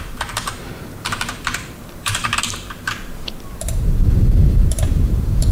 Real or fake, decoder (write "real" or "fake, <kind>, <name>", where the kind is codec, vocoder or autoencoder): fake, vocoder, BigVGAN v2